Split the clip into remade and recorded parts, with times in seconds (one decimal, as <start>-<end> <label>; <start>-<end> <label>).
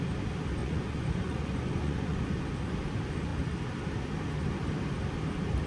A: 0.0-0.6 recorded; 0.6-2.4 remade; 2.4-5.7 recorded